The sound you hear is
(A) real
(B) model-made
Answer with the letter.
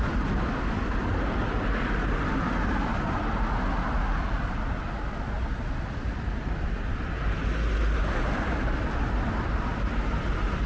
A